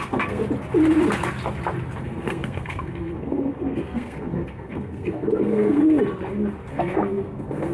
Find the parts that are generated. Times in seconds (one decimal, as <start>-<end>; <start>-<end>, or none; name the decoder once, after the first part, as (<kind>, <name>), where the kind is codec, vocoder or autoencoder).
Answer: 0.0-0.4 (codec, SNAC); 2.0-5.8; 6.7-7.7

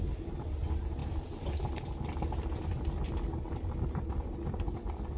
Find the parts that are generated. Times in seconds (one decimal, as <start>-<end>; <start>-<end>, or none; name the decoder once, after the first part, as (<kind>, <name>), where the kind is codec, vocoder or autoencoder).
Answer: none